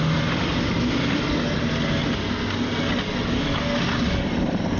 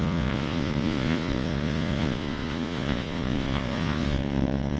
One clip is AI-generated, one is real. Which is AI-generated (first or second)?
second